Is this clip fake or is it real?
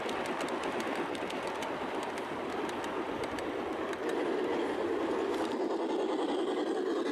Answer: real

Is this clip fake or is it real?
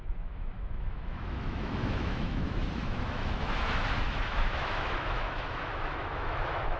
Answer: fake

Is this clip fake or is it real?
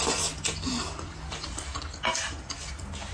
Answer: real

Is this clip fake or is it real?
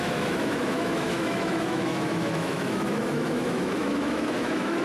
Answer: fake